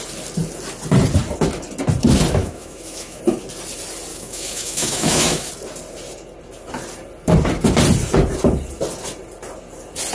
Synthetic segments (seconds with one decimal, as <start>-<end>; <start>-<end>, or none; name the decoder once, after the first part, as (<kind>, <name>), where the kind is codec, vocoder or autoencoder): 2.4-3.2 (autoencoder, DAC-VAE); 4.1-5.5